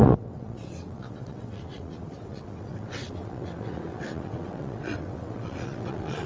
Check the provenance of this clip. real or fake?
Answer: fake